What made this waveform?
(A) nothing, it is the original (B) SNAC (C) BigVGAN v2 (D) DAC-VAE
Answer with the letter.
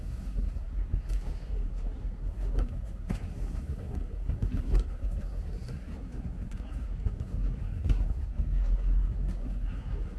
B